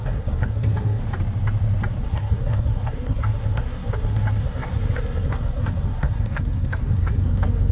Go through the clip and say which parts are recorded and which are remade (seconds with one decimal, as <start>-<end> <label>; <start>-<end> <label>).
0.0-1.0 remade; 1.0-2.0 recorded; 2.0-7.7 remade